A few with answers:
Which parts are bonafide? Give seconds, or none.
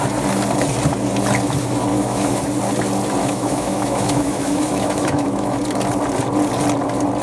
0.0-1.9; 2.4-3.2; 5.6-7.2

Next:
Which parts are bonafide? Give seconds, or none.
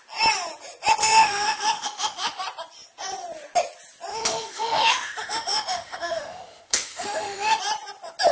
0.0-1.0; 2.4-4.1; 7.6-8.3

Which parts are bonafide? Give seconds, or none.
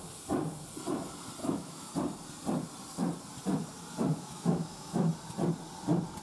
0.0-1.4; 1.9-4.1; 5.1-6.2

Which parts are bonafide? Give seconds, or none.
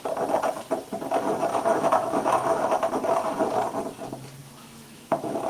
0.0-1.5; 2.9-4.4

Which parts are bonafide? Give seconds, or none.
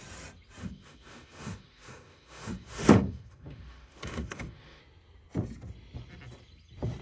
0.0-0.6; 4.8-7.0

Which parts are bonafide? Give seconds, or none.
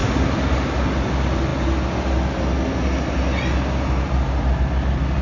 0.0-5.2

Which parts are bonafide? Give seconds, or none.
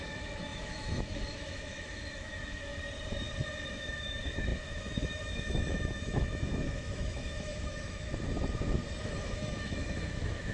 2.7-3.7; 8.1-9.0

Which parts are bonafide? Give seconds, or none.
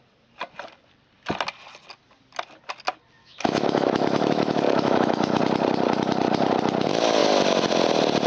0.0-3.2; 5.4-8.3